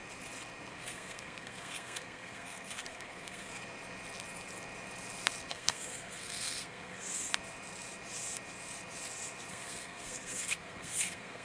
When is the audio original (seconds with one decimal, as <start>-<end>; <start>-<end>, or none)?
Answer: 0.0-0.7; 3.5-5.5; 7.3-9.5